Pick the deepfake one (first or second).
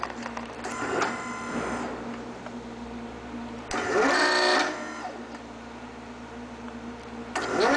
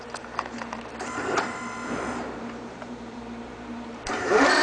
second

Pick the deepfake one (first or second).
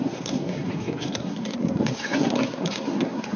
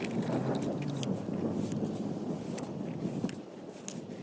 first